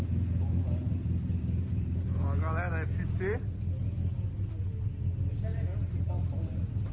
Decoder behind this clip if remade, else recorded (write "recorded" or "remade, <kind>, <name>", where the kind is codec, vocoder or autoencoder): recorded